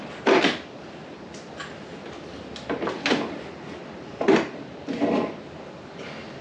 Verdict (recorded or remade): recorded